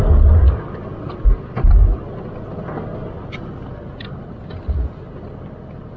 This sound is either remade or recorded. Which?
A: recorded